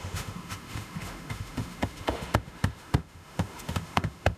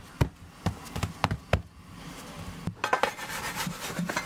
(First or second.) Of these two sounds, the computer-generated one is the first